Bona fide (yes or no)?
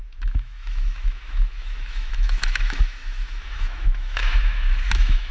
no